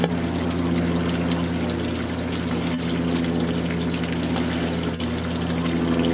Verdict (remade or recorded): recorded